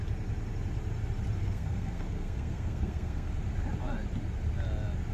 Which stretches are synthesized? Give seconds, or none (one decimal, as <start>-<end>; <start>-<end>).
1.4-3.3